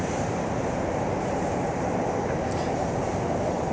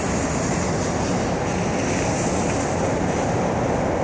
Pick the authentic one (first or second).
second